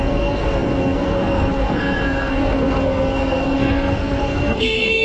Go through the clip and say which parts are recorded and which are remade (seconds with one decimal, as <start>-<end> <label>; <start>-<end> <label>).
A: 0.0-5.0 remade